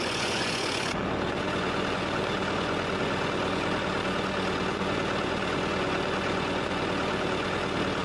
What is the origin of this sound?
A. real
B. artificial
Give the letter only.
B